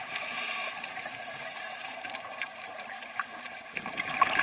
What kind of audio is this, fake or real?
fake